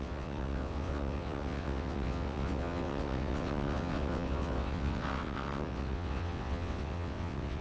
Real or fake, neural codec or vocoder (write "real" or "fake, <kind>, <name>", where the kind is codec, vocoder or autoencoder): fake, vocoder, WaveNeXt